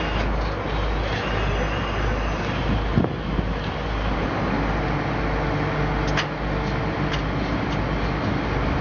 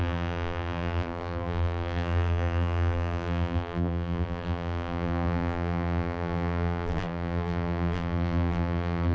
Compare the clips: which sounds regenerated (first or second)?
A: second